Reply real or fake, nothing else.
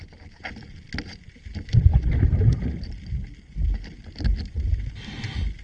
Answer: real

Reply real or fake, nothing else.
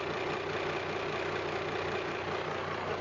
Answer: real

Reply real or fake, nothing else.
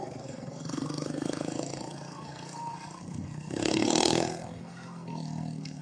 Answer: fake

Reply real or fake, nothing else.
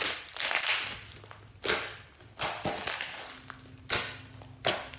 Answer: real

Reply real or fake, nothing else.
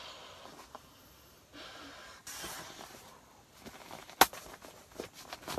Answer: real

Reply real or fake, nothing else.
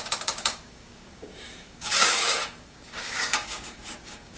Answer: fake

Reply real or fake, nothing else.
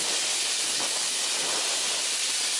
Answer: real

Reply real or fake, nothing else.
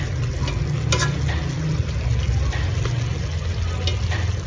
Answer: real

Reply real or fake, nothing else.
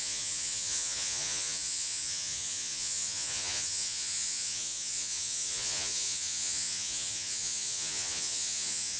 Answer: fake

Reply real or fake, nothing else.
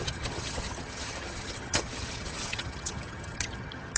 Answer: fake